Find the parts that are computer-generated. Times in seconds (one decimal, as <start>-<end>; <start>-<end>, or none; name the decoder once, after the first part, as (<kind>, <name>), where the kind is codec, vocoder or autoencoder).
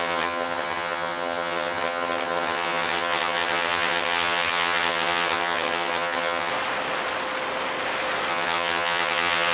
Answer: 0.0-6.5 (vocoder, HiFi-GAN); 8.3-9.5